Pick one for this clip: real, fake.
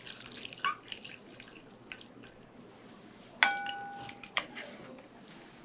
real